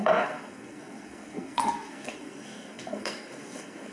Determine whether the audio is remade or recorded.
remade